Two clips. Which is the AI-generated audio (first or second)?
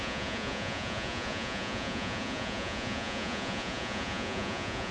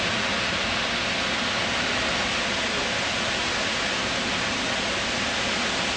first